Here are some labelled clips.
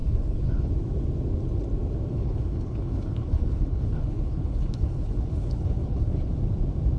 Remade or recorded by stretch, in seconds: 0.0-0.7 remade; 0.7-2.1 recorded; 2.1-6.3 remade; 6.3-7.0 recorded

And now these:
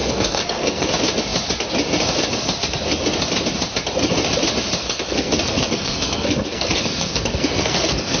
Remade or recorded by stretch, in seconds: 0.0-0.9 remade; 0.9-4.8 recorded; 4.8-8.2 remade